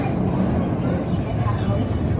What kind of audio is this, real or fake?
real